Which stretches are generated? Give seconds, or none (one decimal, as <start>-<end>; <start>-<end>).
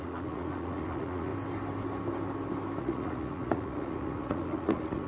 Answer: 0.0-1.3; 2.8-5.1